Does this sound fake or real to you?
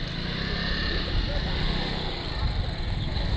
real